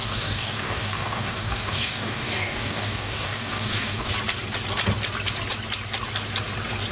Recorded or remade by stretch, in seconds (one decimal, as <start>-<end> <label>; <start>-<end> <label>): 0.0-4.1 remade; 4.1-6.9 recorded